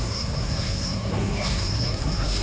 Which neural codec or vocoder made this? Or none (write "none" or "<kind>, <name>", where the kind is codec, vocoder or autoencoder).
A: codec, SNAC